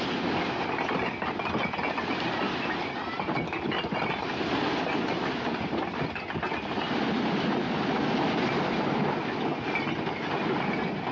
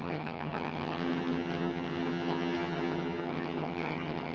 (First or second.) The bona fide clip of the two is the first